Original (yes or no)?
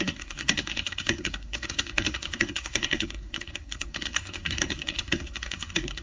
no